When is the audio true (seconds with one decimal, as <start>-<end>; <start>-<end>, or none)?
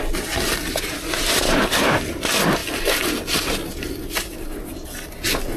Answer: 0.0-5.6